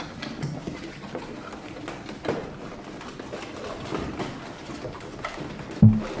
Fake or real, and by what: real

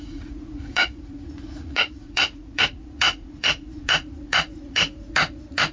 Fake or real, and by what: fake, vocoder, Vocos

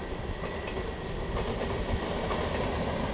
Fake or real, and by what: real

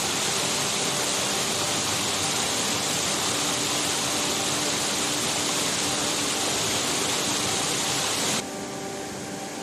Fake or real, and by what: real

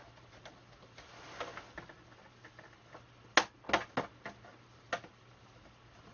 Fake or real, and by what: real